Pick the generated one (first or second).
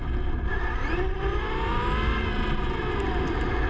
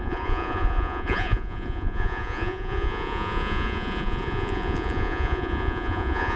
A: second